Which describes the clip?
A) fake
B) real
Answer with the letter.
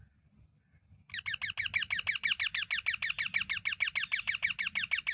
B